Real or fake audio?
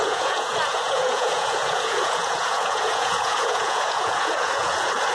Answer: fake